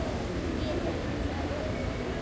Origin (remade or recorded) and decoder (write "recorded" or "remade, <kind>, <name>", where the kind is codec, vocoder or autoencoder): recorded